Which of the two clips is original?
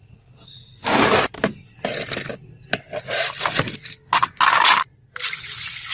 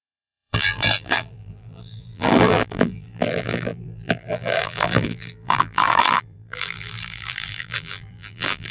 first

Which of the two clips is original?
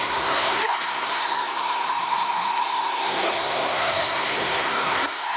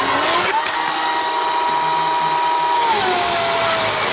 second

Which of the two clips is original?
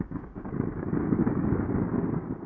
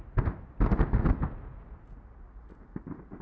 second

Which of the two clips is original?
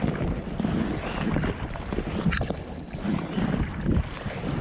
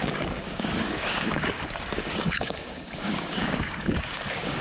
first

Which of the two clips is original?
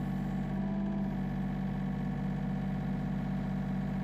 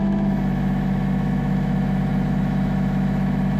first